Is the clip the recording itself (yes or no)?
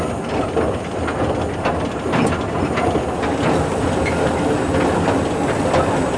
yes